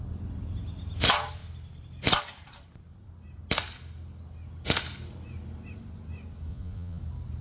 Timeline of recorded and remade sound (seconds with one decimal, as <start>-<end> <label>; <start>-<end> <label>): 0.0-6.5 recorded; 6.5-7.0 remade; 7.0-7.4 recorded